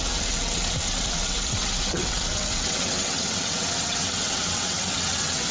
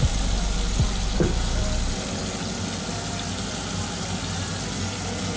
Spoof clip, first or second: first